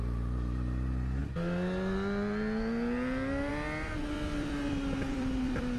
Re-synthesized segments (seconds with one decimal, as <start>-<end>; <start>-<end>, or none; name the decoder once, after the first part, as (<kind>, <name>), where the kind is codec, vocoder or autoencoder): 0.0-1.2 (vocoder, BigVGAN v2); 3.5-5.8